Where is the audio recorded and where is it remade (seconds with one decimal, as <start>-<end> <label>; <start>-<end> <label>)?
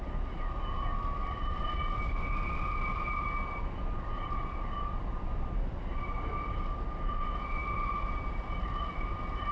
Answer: 0.0-9.5 recorded